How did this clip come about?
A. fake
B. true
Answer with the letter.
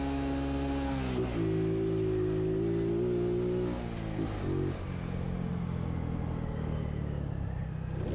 B